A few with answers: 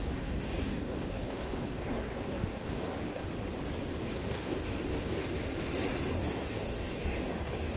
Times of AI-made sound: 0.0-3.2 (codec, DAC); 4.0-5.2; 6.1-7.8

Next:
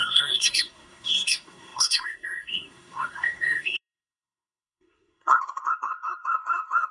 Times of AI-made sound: 0.0-6.9 (codec, SNAC)

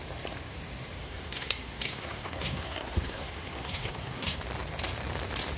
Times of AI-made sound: 1.0-4.4 (codec, SNAC)

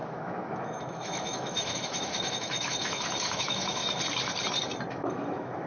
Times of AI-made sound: 0.0-3.8 (autoencoder, DAC-VAE); 4.9-5.7

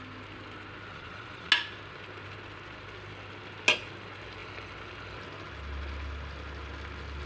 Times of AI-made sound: 0.9-1.5 (vocoder, Vocos)